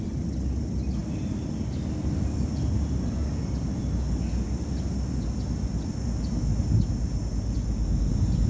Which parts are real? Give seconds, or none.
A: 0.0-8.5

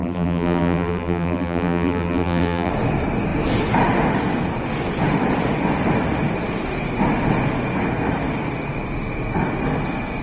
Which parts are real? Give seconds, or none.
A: 2.7-10.2

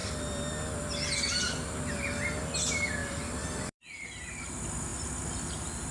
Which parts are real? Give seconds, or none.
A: 0.0-3.0; 4.5-5.9

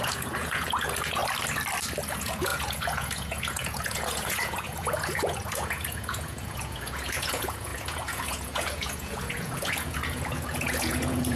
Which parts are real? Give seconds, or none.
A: 1.2-2.1

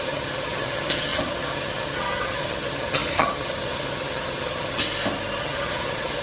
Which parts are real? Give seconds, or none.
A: 4.8-5.4